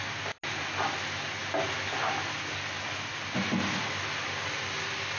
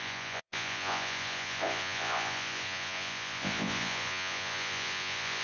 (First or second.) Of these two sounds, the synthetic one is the second